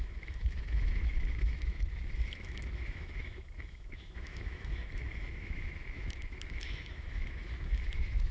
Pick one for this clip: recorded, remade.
remade